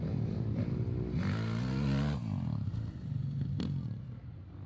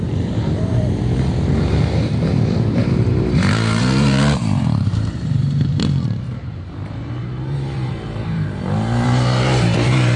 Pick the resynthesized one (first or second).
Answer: second